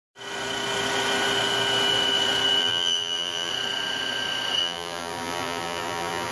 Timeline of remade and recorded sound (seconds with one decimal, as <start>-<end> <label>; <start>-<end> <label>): 0.0-2.6 recorded; 2.6-3.5 remade; 3.5-4.6 recorded; 4.6-6.3 remade